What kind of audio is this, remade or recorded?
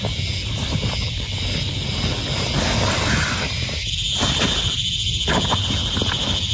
recorded